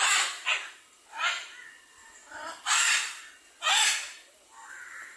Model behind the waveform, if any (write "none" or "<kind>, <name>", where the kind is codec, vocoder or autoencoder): none